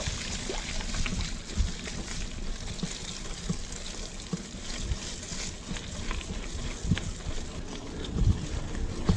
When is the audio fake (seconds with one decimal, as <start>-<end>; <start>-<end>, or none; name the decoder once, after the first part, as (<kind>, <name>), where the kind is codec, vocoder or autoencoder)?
none